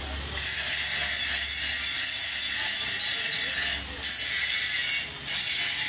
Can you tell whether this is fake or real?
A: real